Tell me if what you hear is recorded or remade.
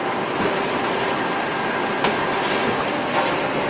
recorded